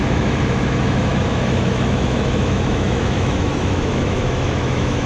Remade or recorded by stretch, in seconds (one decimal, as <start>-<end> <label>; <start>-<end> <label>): 0.0-5.1 remade

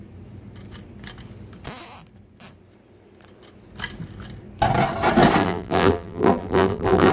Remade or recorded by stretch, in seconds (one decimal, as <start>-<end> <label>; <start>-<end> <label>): 0.0-5.4 recorded; 5.4-7.1 remade

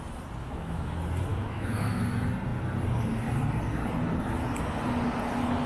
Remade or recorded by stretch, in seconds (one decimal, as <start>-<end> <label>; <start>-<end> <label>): 0.0-0.4 recorded; 0.4-0.9 remade; 0.9-1.3 recorded; 1.3-2.0 remade; 2.0-5.7 recorded

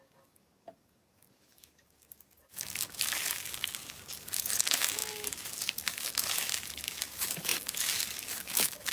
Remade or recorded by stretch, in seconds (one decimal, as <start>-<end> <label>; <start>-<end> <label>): 0.0-8.9 remade